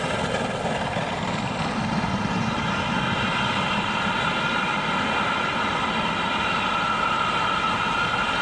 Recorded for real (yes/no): yes